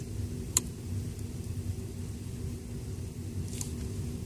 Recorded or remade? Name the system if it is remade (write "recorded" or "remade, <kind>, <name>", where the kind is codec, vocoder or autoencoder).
remade, vocoder, BigVGAN v2